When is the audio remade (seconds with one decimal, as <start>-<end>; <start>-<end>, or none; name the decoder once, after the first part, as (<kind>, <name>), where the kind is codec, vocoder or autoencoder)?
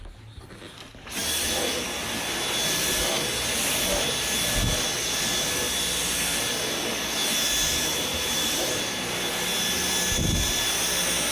8.1-8.8 (vocoder, BigVGAN v2)